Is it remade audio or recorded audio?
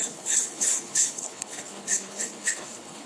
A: remade